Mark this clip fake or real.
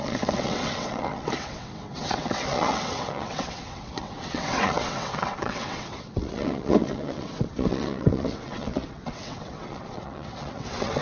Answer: fake